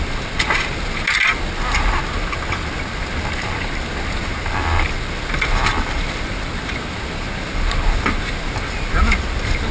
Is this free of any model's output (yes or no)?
yes